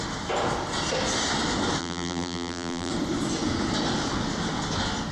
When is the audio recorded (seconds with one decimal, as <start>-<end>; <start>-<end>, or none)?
0.0-1.8; 2.9-5.1